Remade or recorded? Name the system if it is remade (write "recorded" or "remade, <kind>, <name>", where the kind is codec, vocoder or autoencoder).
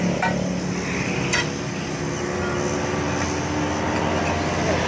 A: recorded